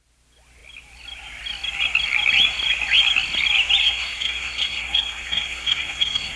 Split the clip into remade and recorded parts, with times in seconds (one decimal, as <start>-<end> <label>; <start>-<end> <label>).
0.0-3.8 recorded; 3.8-6.4 remade